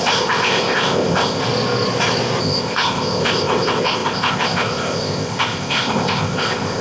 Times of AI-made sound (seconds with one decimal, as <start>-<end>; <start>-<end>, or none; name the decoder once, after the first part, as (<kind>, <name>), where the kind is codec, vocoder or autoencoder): 0.0-1.4 (codec, ZipCodec); 2.4-6.8